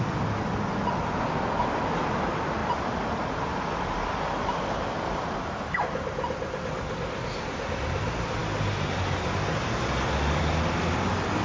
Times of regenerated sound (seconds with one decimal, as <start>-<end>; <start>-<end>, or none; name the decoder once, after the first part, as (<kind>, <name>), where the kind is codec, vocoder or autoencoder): none